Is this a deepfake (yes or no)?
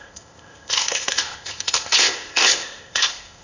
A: yes